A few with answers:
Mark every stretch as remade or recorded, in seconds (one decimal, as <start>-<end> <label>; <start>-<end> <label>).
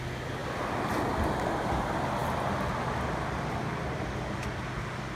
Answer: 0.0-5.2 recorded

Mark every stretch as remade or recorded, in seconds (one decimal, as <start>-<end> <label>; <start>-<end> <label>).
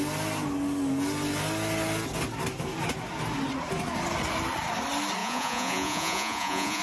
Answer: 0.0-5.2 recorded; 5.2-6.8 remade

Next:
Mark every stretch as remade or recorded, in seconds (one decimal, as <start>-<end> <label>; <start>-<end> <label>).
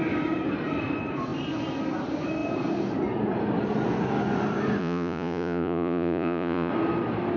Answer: 0.0-4.8 recorded; 4.8-6.7 remade; 6.7-7.4 recorded